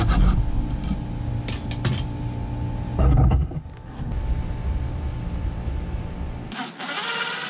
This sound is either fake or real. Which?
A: real